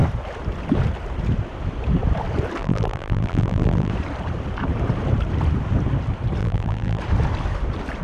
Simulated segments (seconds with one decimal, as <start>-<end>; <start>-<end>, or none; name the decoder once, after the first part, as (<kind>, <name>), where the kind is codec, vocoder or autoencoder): 2.6-3.9 (vocoder, BigVGAN v2); 6.4-7.0